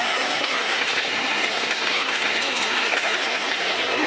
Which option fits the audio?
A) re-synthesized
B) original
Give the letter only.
A